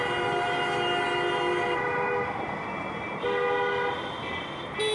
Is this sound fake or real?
real